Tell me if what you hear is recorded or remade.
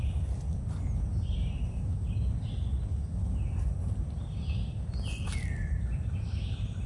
recorded